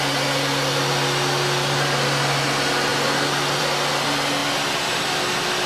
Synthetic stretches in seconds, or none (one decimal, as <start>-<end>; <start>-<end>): none